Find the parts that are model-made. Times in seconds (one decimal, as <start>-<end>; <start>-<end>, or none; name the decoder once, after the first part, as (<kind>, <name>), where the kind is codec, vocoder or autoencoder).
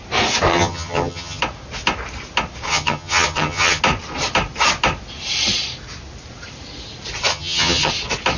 0.5-1.4 (vocoder, HiFi-GAN); 2.7-3.8; 7.3-7.9